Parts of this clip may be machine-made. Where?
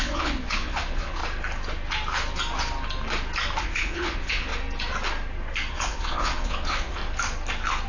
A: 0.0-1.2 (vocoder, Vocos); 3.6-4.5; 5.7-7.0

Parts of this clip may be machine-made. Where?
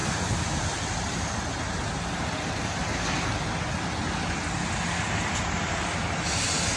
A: none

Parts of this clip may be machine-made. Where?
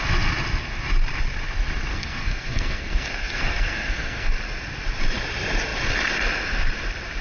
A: 1.9-4.3 (codec, SNAC)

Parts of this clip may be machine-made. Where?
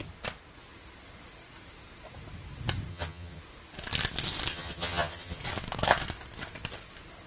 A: 2.9-3.4 (vocoder, HiFi-GAN); 4.5-5.4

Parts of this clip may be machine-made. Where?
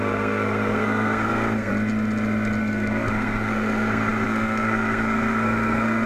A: 0.0-1.7 (codec, SNAC); 2.6-6.1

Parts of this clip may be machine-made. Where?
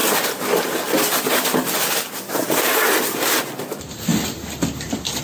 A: none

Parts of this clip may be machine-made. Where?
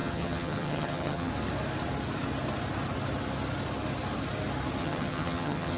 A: 0.0-1.3 (vocoder, HiFi-GAN); 4.8-5.8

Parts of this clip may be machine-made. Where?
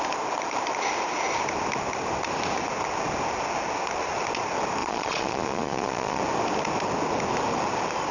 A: 4.8-6.2 (vocoder, Vocos)